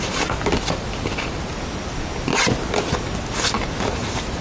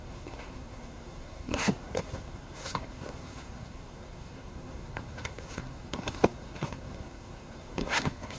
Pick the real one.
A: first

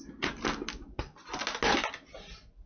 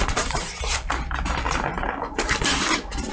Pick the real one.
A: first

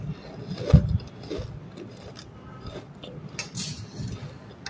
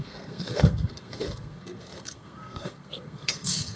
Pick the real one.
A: first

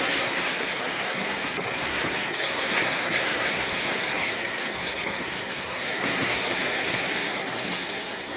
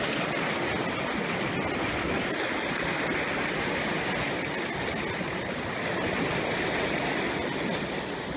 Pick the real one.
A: second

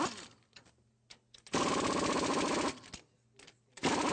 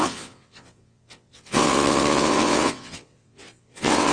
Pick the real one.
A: first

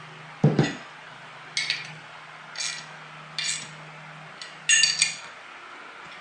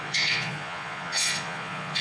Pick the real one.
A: first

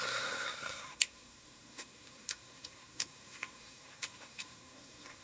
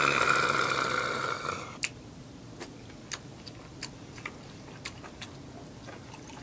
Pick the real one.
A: second